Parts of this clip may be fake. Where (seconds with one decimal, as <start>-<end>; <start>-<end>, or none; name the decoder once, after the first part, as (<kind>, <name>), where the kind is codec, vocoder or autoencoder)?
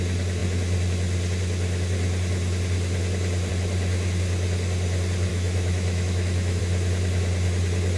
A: 5.3-6.6 (autoencoder, DAC-VAE)